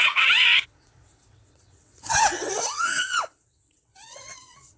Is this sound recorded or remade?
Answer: remade